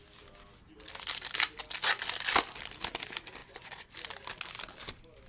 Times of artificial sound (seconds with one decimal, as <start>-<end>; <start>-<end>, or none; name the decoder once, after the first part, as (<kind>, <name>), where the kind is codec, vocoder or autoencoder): 3.4-3.9 (vocoder, Vocos)